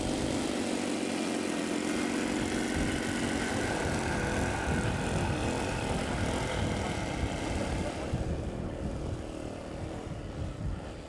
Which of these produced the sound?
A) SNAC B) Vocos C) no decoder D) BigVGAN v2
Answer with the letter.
C